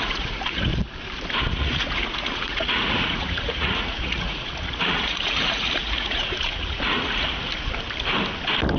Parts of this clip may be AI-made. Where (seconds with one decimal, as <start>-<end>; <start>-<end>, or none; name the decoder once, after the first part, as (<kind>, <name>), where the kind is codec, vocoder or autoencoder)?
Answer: 0.0-0.7 (vocoder, Vocos); 1.5-7.5